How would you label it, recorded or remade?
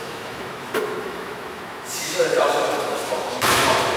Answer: remade